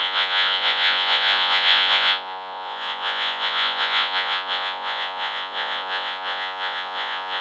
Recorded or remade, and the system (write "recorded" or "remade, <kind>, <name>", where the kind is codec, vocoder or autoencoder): remade, vocoder, Vocos